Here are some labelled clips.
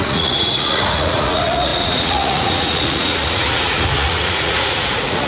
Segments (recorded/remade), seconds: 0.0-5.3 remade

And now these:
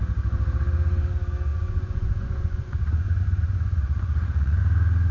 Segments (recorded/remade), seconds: 0.0-1.5 recorded; 1.5-4.6 remade; 4.6-5.1 recorded

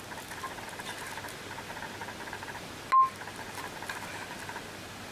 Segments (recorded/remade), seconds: 0.0-5.1 recorded

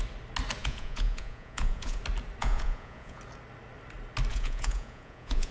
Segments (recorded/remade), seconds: 0.0-0.6 recorded; 0.6-2.0 remade; 2.0-2.4 recorded; 2.4-3.2 remade; 3.2-4.3 recorded; 4.3-5.5 remade